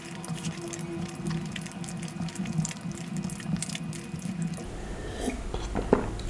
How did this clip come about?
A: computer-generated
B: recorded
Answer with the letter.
B